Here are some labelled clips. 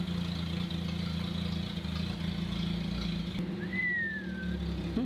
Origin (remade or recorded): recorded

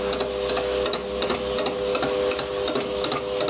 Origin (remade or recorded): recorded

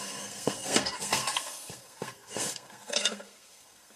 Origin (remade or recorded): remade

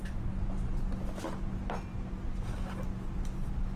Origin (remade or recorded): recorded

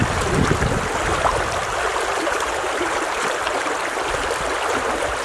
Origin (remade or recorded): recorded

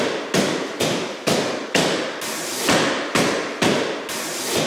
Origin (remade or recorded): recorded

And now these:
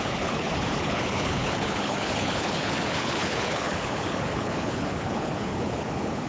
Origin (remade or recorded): remade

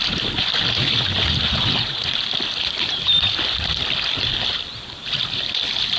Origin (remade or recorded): recorded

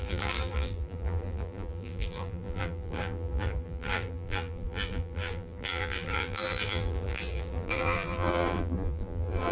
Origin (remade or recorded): remade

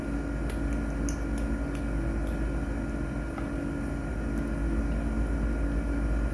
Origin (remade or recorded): recorded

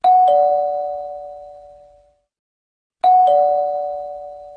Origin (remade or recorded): recorded